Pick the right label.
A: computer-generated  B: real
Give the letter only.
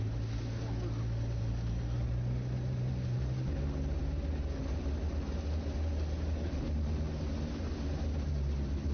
B